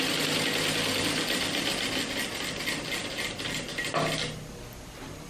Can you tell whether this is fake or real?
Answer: real